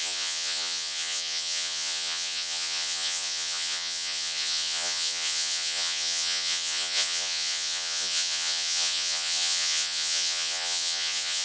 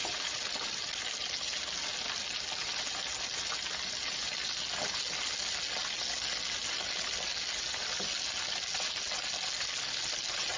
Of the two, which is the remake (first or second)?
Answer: first